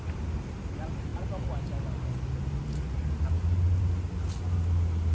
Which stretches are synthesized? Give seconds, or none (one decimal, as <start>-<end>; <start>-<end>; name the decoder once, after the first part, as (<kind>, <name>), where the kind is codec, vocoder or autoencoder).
none